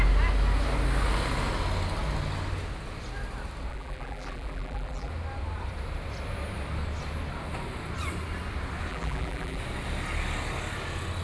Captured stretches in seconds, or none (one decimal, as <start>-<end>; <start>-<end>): 0.0-3.7; 5.1-8.9; 9.6-11.2